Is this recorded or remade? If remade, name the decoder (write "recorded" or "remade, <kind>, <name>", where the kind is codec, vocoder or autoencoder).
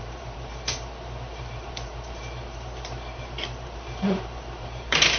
remade, vocoder, BigVGAN v2